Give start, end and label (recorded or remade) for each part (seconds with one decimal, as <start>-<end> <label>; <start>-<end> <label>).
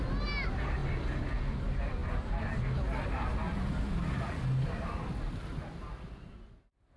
0.0-0.8 recorded; 0.8-1.4 remade; 1.4-7.0 recorded